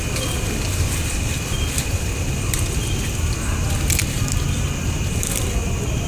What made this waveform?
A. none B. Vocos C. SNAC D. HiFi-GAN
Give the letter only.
A